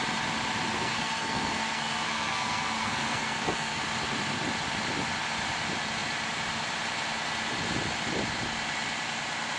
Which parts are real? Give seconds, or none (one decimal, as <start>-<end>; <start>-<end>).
0.0-0.7; 3.8-9.6